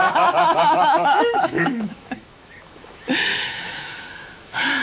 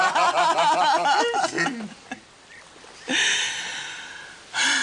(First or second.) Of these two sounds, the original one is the second